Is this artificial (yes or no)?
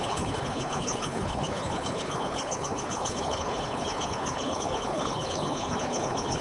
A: yes